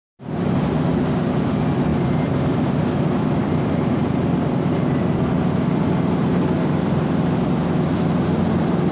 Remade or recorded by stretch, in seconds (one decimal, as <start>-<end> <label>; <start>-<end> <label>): 0.0-8.9 recorded